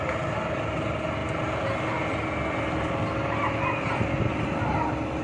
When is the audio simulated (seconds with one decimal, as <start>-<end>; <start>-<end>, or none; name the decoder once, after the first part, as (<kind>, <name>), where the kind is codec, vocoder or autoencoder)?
none